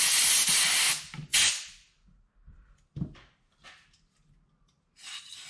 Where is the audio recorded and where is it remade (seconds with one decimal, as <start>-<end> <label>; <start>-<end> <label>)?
0.0-5.5 recorded